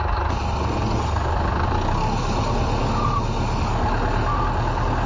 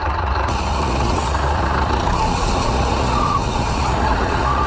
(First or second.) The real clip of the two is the first